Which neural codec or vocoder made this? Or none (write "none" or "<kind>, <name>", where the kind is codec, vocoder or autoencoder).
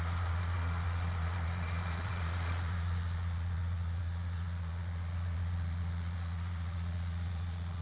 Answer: vocoder, Vocos